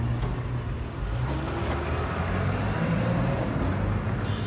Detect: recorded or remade recorded